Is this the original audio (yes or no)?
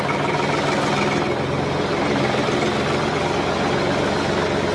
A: yes